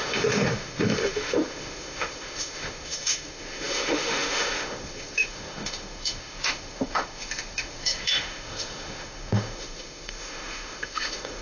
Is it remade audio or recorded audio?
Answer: remade